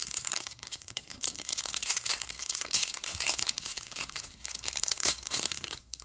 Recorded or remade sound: remade